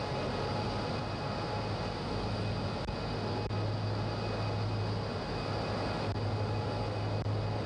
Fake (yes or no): no